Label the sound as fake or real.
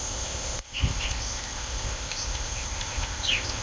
fake